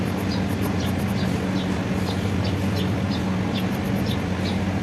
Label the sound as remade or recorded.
recorded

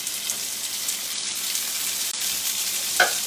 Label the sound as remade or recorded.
remade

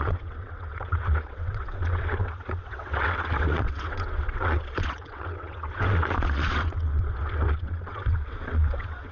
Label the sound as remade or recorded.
remade